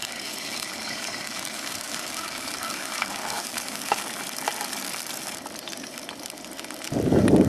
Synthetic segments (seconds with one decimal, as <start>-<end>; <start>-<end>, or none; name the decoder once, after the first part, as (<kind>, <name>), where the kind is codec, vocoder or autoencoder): 0.0-4.0 (codec, DAC)